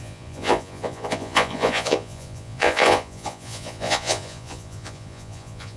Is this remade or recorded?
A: remade